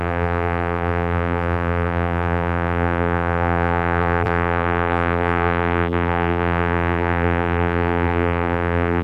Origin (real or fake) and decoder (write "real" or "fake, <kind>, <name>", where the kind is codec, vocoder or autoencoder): fake, vocoder, BigVGAN v2